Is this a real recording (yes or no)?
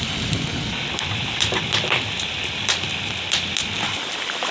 yes